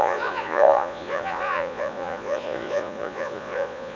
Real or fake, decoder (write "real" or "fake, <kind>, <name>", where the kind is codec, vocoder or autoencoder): fake, vocoder, Vocos